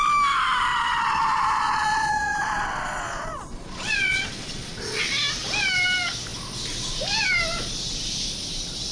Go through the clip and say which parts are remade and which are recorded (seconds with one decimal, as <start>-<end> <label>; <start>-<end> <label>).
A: 0.0-0.7 recorded; 0.7-5.0 remade; 5.0-8.9 recorded